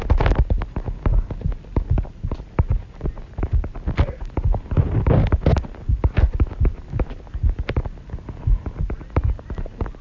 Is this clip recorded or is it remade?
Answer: recorded